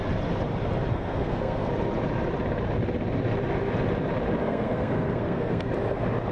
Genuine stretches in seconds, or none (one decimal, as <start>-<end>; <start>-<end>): 0.0-0.9; 1.7-4.4; 5.7-6.3

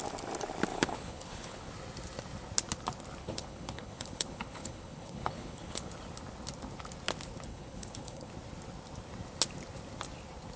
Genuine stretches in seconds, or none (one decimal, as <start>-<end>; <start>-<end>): 0.0-0.7; 1.7-3.2; 5.9-7.5; 8.3-10.6